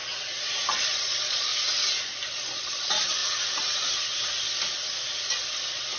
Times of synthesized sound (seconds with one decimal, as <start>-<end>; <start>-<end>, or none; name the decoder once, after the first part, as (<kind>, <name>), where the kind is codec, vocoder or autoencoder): 0.7-1.5 (vocoder, Vocos); 2.3-3.2